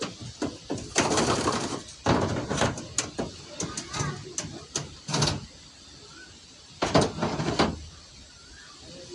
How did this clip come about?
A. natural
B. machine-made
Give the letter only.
A